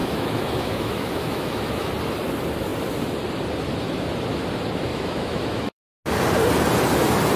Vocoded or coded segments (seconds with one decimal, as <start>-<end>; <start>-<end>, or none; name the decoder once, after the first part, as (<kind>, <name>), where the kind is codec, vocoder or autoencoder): 0.0-1.9 (autoencoder, DAC-VAE); 4.9-5.8